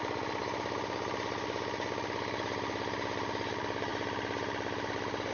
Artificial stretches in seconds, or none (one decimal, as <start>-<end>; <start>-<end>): 0.0-0.4; 3.5-3.9